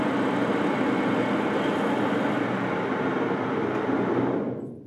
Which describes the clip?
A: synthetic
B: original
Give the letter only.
B